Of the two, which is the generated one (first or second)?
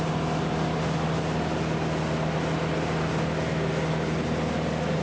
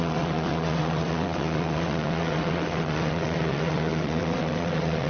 second